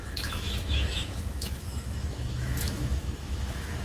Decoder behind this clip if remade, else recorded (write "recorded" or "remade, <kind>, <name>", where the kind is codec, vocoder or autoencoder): remade, autoencoder, DAC-VAE